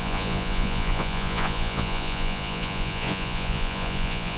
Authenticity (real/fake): fake